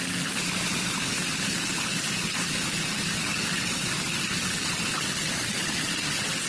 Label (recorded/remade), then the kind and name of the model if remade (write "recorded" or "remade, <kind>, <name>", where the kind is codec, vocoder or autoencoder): recorded